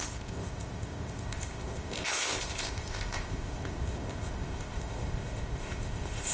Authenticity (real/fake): fake